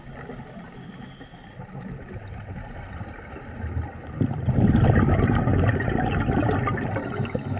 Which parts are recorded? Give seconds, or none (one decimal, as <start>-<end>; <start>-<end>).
0.0-1.2; 3.7-7.6